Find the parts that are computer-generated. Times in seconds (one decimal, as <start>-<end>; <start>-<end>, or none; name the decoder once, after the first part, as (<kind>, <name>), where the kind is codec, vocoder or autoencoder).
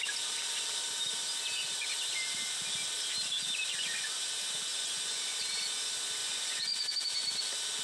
3.7-4.3 (vocoder, Vocos); 4.7-5.4; 6.2-6.7